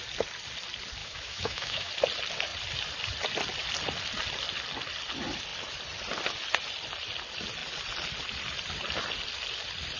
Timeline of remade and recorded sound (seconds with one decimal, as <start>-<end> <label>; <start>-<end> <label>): 0.0-1.0 recorded; 1.0-1.9 remade; 1.9-10.0 recorded